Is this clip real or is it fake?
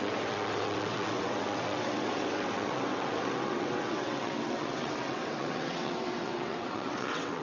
fake